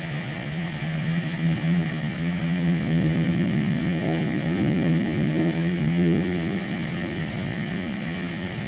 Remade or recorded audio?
remade